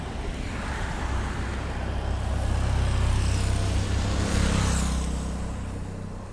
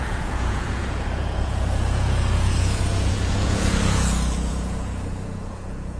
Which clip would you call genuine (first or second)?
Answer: first